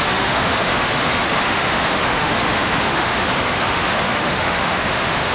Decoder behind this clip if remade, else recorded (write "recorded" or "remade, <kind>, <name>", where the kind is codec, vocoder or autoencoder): remade, autoencoder, DAC-VAE